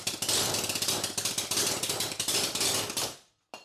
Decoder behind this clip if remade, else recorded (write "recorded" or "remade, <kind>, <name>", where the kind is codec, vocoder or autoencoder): recorded